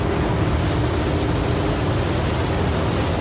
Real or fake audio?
real